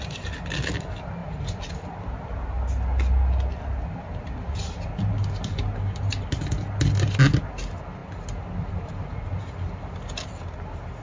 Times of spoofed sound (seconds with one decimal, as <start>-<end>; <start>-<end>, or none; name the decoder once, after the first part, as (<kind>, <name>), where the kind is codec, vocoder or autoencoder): none

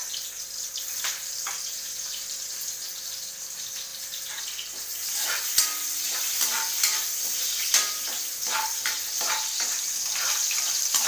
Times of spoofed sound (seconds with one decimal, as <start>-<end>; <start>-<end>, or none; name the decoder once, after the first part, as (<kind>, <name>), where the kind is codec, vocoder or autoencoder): 4.9-7.9 (vocoder, BigVGAN v2)

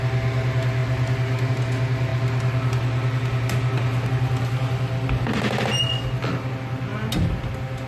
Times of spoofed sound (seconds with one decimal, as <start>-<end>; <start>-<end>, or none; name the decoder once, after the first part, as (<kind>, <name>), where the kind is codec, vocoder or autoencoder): 2.1-6.5 (vocoder, BigVGAN v2)

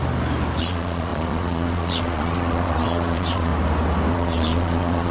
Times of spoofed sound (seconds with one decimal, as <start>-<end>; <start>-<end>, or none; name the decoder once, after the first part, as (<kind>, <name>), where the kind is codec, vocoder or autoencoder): 0.6-3.5 (vocoder, Vocos); 4.1-5.1

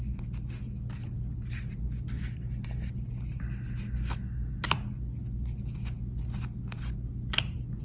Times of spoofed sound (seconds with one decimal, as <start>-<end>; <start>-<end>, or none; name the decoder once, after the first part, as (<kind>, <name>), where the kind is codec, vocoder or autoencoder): none

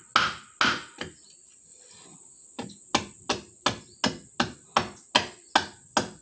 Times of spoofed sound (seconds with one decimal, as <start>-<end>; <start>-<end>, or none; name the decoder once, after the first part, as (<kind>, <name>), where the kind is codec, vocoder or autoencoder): none

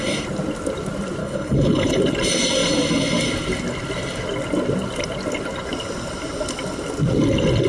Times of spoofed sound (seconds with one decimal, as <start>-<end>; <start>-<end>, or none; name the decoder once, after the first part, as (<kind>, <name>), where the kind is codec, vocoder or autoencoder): 1.2-2.0 (codec, HILCodec)

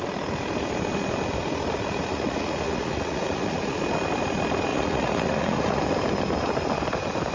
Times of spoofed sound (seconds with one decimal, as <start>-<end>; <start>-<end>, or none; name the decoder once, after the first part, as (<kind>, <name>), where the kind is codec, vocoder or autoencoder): 2.1-3.8 (vocoder, Vocos); 4.7-5.8